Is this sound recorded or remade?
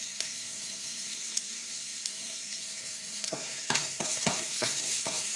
remade